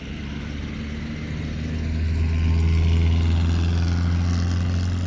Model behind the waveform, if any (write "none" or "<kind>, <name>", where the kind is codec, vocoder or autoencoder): none